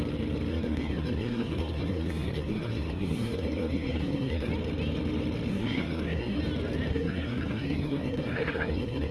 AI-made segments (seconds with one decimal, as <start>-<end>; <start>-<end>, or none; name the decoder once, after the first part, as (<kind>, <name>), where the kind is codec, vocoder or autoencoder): 0.5-4.5 (codec, SNAC); 5.5-6.4; 6.9-9.1